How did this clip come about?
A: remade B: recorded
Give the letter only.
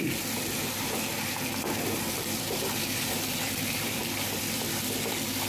A